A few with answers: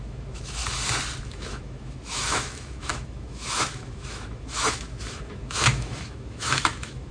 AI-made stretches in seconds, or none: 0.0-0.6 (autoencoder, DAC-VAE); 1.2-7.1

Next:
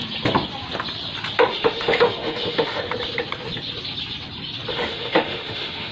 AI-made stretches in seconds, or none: 1.5-2.9 (autoencoder, DAC-VAE); 4.7-5.9

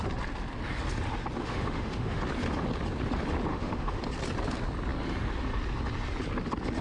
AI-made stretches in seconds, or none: 1.4-2.2 (autoencoder, DAC-VAE); 3.5-4.0

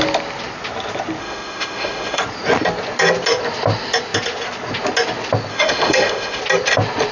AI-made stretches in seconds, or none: 1.2-2.2 (autoencoder, DAC-VAE); 5.5-6.4

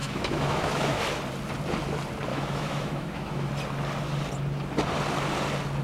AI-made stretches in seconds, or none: 0.0-1.0 (autoencoder, DAC-VAE); 2.3-3.5

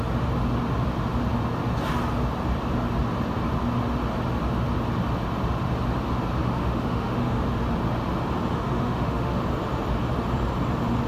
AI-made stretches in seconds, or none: 6.4-7.4 (autoencoder, DAC-VAE); 8.5-9.4

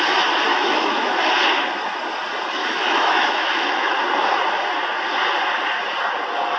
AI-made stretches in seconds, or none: 0.5-1.3 (autoencoder, DAC-VAE); 2.6-4.0

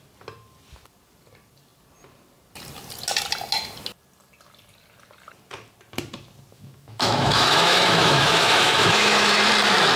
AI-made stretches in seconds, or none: 6.5-9.5 (autoencoder, DAC-VAE)